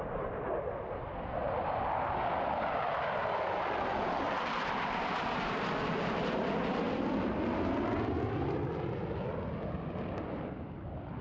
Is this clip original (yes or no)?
yes